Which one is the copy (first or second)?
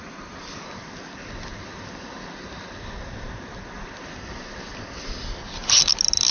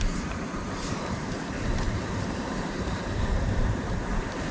second